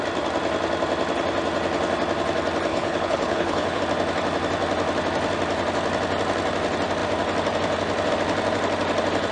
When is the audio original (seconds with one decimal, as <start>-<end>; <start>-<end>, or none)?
0.0-2.7; 3.8-9.3